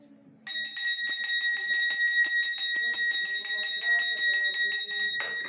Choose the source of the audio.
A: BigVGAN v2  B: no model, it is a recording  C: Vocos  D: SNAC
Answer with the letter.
B